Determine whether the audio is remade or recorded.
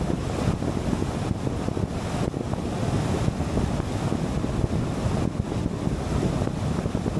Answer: recorded